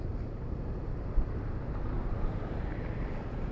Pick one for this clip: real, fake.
fake